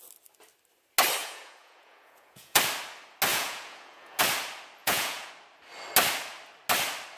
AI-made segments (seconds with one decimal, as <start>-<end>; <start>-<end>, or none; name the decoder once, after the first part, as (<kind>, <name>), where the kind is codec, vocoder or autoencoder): 1.2-2.6 (vocoder, Vocos); 3.3-4.2; 4.8-5.3